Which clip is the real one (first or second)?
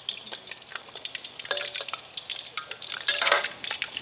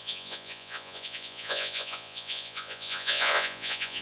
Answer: first